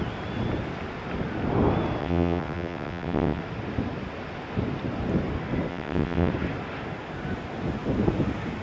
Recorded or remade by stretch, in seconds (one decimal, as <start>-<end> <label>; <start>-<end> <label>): 0.0-2.0 recorded; 2.0-3.4 remade; 3.4-5.7 recorded; 5.7-6.3 remade; 6.3-8.6 recorded